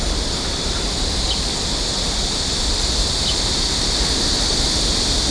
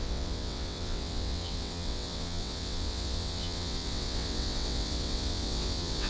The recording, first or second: first